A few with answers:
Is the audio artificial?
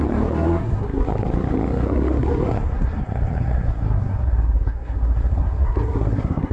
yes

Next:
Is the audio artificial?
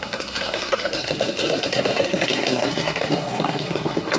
yes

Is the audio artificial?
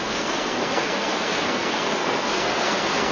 yes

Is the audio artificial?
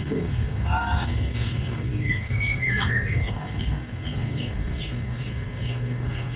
yes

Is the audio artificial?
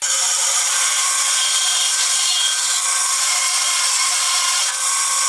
no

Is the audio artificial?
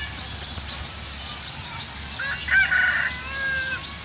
no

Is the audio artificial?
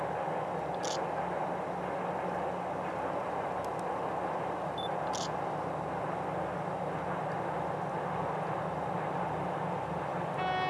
no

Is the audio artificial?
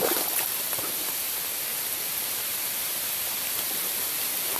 no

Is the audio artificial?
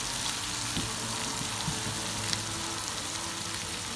no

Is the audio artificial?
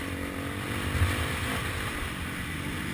no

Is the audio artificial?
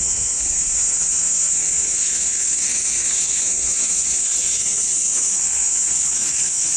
yes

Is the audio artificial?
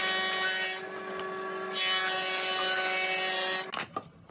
no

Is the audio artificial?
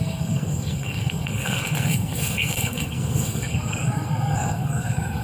yes